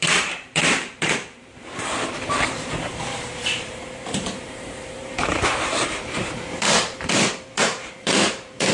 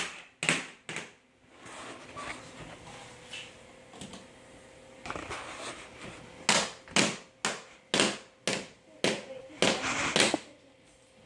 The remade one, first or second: first